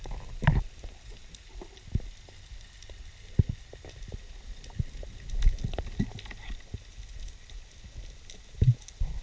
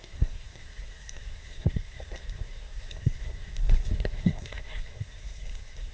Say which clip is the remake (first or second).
second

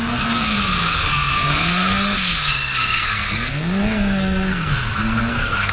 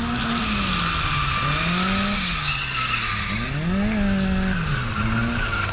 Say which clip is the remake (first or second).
first